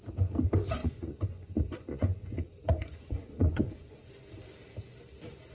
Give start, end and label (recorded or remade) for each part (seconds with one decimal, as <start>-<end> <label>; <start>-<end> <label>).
0.0-0.8 recorded; 0.8-4.1 remade; 4.1-5.5 recorded